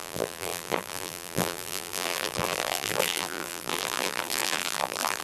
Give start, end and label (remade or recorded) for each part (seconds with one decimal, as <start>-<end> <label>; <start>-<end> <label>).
0.0-5.2 remade